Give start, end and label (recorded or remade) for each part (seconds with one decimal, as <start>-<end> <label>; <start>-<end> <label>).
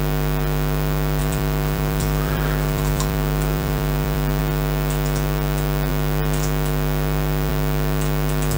0.0-1.2 recorded; 1.2-4.4 remade; 4.4-8.6 recorded